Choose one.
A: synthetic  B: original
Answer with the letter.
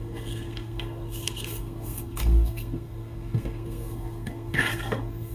A